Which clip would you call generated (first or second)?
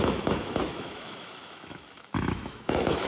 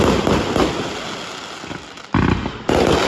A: first